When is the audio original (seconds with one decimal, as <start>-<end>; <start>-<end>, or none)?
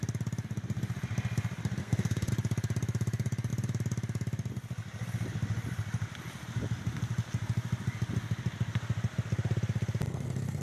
0.0-1.8; 2.3-10.6